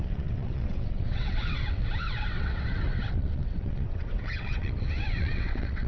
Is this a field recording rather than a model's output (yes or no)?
no